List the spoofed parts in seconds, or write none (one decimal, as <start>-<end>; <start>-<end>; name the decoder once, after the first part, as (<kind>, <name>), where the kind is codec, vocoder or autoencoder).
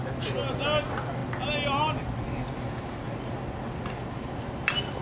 none